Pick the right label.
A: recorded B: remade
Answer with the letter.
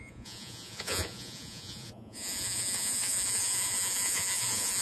B